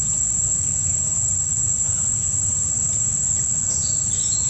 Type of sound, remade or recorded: recorded